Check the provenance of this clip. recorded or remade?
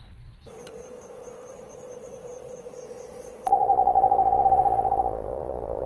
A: remade